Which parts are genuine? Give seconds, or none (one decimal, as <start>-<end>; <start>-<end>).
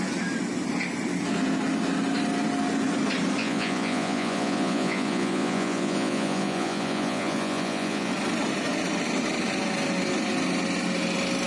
0.0-3.4; 8.1-11.5